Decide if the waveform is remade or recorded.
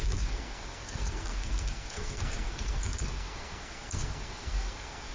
remade